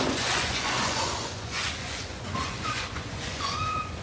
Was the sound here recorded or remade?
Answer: remade